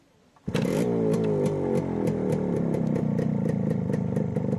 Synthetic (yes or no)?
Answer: no